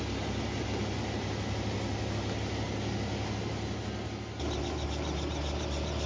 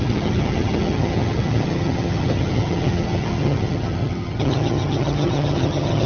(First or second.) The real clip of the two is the first